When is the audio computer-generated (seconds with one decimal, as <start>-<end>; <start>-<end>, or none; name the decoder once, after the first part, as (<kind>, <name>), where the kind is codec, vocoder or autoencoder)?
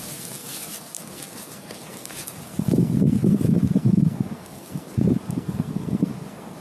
0.0-6.6 (codec, SNAC)